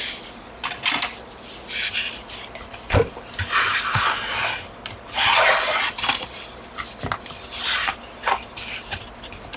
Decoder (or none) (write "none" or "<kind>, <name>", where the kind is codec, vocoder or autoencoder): none